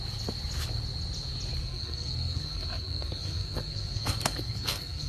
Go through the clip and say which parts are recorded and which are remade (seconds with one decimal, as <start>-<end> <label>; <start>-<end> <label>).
0.0-1.6 recorded; 1.6-5.1 remade

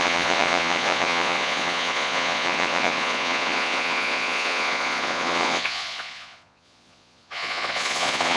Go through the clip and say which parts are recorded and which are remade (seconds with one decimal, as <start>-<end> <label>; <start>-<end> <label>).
0.0-8.4 remade

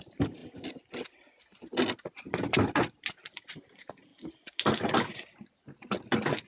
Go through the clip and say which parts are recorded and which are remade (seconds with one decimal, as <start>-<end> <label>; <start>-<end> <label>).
0.0-6.5 recorded

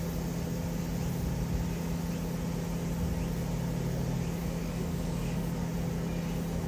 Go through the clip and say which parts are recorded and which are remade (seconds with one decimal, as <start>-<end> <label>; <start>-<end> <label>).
0.0-4.4 recorded; 4.4-5.7 remade; 5.7-6.7 recorded

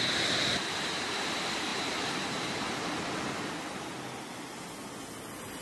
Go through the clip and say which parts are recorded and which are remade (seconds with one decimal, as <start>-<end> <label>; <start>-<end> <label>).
0.0-5.6 recorded

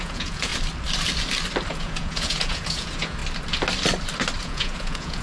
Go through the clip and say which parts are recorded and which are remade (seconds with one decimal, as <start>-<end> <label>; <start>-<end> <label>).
0.0-0.5 remade; 0.5-1.7 recorded; 1.7-3.2 remade; 3.2-4.4 recorded; 4.4-5.2 remade

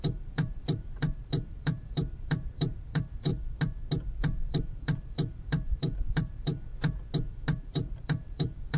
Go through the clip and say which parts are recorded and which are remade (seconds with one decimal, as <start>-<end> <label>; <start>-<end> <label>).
0.0-3.3 remade; 3.3-4.2 recorded; 4.2-6.7 remade; 6.7-7.6 recorded; 7.6-8.8 remade